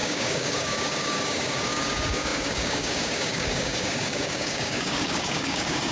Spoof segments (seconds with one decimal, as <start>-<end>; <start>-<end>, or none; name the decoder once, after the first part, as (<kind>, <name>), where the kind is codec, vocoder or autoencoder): 0.0-5.9 (codec, DAC)